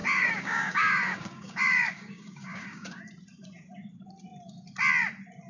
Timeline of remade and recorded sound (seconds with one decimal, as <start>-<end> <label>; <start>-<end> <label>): 0.0-3.0 remade; 3.0-5.5 recorded